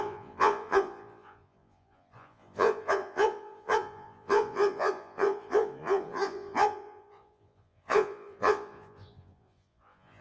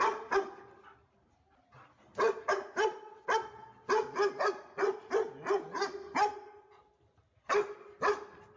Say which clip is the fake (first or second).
first